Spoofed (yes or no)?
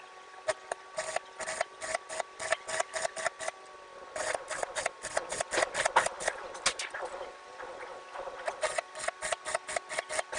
no